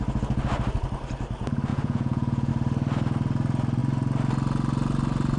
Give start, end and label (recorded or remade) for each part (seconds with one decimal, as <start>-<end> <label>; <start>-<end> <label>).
0.0-1.7 recorded; 1.7-2.5 remade; 2.5-5.4 recorded